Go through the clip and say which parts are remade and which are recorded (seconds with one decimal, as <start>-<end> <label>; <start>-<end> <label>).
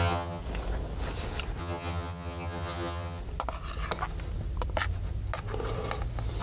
0.0-0.4 remade; 0.4-1.6 recorded; 1.6-3.2 remade; 3.2-6.4 recorded